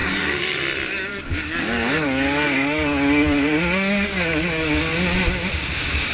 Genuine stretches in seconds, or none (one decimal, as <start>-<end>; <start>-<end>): 0.6-1.1; 4.8-6.1